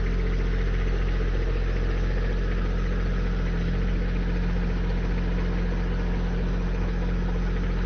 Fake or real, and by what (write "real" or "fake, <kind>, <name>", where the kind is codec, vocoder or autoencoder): real